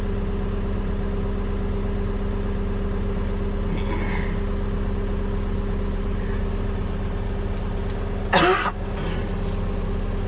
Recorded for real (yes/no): yes